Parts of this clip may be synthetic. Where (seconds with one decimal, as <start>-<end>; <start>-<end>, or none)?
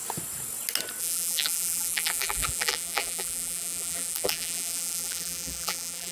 1.0-6.1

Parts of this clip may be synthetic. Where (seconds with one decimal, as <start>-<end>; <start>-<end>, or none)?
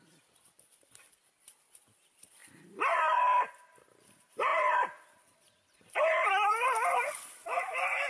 0.0-8.1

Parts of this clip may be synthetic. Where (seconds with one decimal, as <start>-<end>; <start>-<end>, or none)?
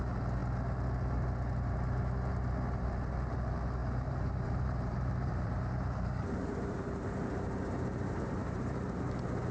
3.8-9.0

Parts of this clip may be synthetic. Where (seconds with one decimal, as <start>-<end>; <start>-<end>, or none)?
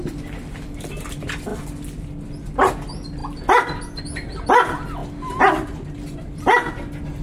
none